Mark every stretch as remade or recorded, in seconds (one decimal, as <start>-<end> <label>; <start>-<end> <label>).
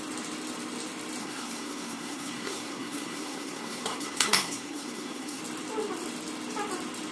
0.0-1.2 recorded; 1.2-5.4 remade; 5.4-7.1 recorded